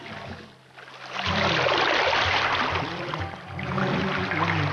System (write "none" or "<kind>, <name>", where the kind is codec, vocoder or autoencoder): none